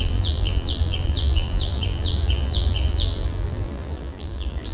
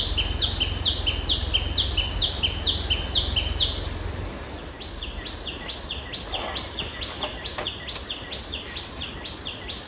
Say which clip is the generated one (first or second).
first